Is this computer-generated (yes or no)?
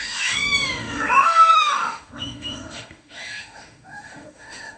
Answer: yes